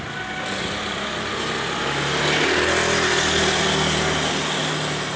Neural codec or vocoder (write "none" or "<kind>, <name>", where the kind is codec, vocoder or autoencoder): none